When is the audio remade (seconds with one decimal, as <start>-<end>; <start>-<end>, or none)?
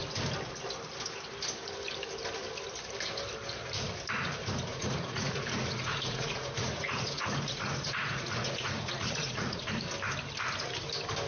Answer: 4.7-9.6